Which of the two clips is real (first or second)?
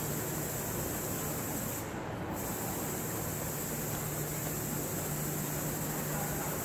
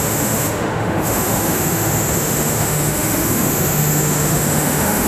first